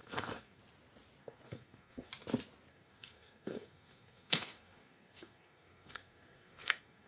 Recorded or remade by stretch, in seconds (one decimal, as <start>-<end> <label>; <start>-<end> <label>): 0.0-0.6 remade; 0.6-1.2 recorded; 1.2-2.1 remade; 2.1-2.7 recorded; 2.7-7.1 remade